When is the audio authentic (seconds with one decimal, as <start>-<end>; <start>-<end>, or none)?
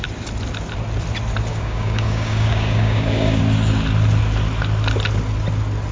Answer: 0.0-1.5; 3.4-5.9